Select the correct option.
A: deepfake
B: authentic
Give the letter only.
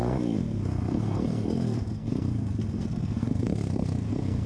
A